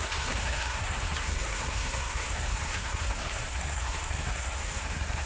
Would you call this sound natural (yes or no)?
no